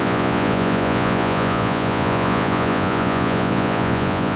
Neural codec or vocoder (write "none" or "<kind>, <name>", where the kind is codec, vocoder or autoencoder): vocoder, Vocos